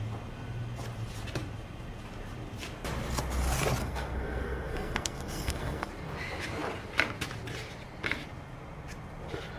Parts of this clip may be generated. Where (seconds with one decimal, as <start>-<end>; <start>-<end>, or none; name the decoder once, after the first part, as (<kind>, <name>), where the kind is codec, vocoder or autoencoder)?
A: 3.8-5.9 (codec, SNAC)